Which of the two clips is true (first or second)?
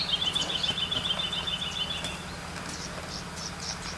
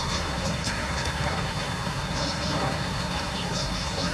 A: first